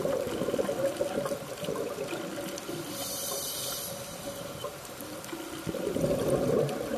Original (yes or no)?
no